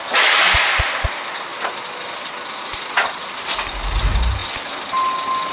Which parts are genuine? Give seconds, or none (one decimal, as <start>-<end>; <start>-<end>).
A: 0.0-1.5; 3.7-5.5